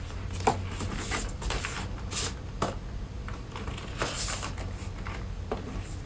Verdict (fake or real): real